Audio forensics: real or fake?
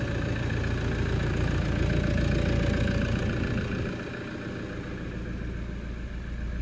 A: real